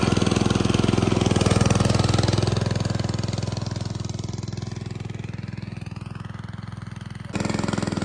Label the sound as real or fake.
real